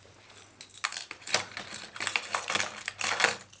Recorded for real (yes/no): yes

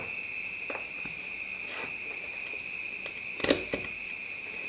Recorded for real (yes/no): yes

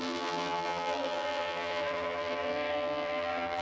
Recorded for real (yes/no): no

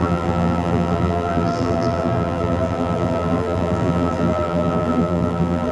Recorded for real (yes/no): no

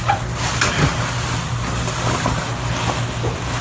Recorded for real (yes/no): yes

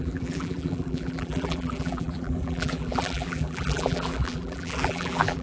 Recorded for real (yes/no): no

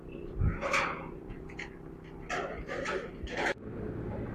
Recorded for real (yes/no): no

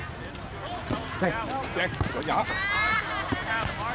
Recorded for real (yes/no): yes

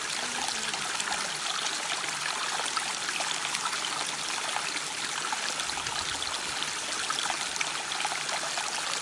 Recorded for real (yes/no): yes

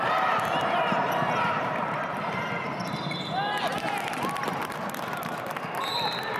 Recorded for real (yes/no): yes